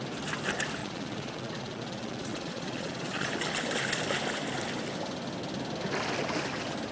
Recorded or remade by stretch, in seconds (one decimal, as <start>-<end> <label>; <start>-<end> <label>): 0.0-0.8 recorded; 0.8-3.3 remade; 3.3-6.9 recorded